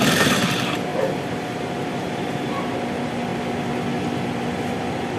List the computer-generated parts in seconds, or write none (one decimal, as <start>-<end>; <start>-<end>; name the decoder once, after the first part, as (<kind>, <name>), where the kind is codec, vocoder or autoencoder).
0.9-2.7 (vocoder, BigVGAN v2)